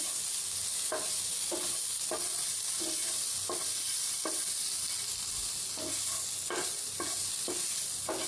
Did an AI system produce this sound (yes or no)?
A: no